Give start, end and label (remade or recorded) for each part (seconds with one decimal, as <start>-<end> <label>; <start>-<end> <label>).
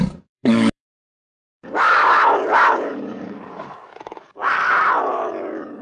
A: 0.0-4.4 remade; 4.4-5.0 recorded; 5.0-5.8 remade